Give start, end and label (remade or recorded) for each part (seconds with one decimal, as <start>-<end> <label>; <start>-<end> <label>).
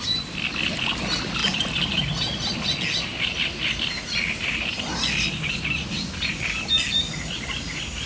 0.0-1.4 recorded; 1.4-2.1 remade; 2.1-8.1 recorded